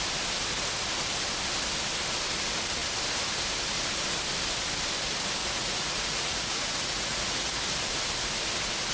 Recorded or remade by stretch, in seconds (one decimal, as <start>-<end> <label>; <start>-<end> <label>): 0.0-5.4 recorded; 5.4-7.6 remade; 7.6-8.9 recorded